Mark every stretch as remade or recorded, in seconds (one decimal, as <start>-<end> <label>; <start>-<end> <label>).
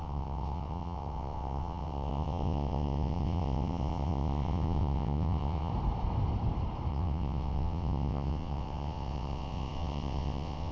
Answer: 0.0-5.7 remade; 5.7-6.9 recorded; 6.9-10.7 remade